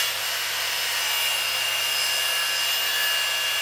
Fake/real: real